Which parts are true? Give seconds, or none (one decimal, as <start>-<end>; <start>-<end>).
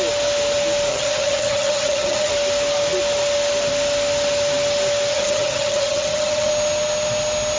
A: 0.0-0.9; 2.3-5.1; 6.5-7.6